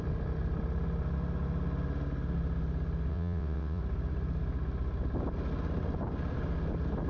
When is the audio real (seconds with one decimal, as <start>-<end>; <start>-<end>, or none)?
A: 0.0-3.1; 3.8-7.1